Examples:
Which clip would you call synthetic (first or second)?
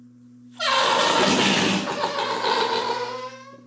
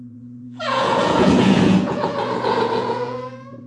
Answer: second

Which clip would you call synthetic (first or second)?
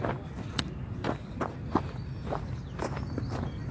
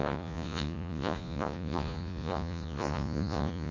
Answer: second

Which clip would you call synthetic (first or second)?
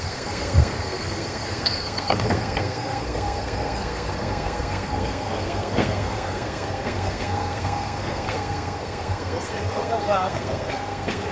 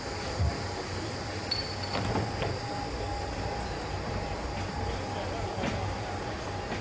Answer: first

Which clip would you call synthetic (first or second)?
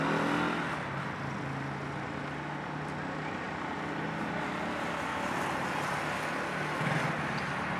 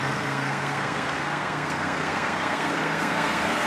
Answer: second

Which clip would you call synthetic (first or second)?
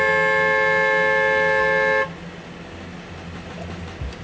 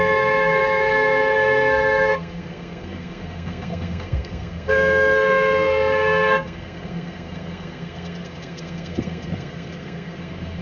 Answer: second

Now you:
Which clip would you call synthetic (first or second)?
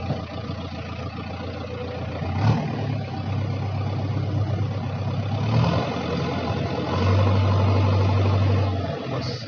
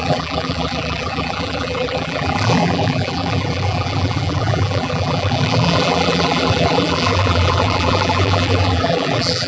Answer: second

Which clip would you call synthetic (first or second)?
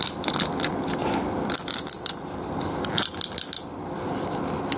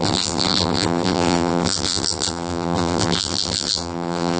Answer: second